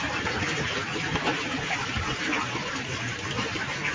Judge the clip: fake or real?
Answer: fake